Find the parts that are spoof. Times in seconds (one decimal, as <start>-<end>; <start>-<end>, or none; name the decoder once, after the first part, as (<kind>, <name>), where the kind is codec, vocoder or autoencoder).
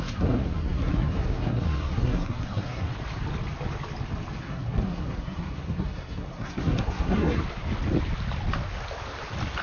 0.0-2.9 (codec, SNAC); 4.4-7.4